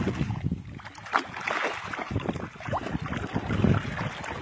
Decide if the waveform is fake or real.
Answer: real